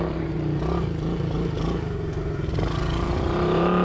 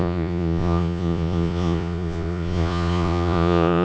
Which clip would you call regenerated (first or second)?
second